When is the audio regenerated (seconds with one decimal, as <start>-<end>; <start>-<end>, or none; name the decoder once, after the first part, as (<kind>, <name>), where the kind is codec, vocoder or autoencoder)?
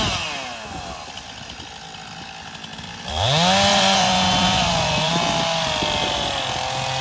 3.7-5.1 (vocoder, Vocos)